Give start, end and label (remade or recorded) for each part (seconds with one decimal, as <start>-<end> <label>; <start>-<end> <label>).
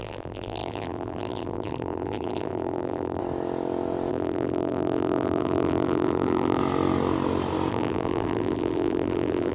0.0-3.2 remade; 3.2-4.1 recorded; 4.1-6.6 remade; 6.6-7.7 recorded; 7.7-9.5 remade